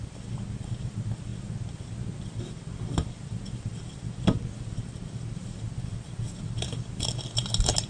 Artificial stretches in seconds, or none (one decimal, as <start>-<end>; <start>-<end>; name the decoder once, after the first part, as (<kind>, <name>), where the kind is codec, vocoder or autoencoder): none

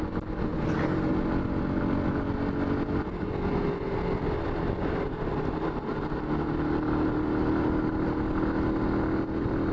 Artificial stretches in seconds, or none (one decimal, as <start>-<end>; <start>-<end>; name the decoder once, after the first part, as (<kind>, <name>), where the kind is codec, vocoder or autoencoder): none

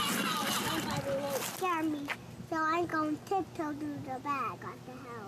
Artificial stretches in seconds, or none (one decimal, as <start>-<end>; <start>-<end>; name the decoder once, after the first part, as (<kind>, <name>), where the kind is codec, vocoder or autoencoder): none

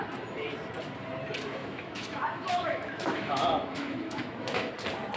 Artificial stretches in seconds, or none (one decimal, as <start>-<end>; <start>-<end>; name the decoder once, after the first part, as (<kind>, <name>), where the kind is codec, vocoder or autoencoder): 1.6-4.7 (autoencoder, DAC-VAE)

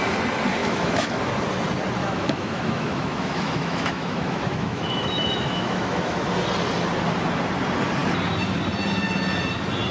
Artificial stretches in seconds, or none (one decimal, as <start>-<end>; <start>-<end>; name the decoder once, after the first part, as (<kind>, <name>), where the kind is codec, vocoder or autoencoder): 0.6-1.2 (autoencoder, DAC-VAE); 2.0-6.3